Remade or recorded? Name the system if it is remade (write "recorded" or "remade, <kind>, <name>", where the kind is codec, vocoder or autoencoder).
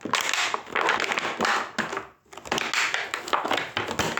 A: recorded